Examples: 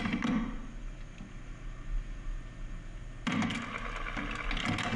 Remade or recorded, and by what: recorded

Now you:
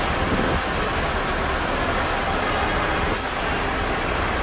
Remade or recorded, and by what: recorded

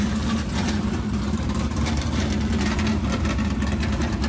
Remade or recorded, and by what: remade, vocoder, BigVGAN v2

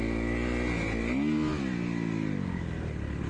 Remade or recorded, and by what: recorded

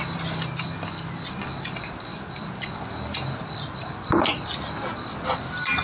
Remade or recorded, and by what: recorded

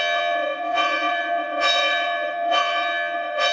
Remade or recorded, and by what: remade, vocoder, WaveNeXt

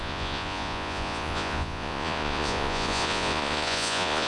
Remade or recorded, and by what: remade, vocoder, Vocos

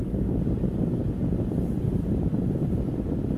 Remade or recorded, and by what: recorded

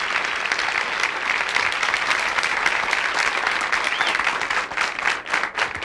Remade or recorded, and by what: recorded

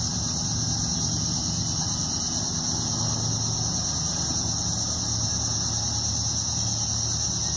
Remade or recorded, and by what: recorded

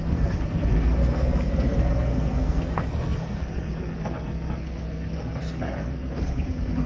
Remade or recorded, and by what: remade, codec, SNAC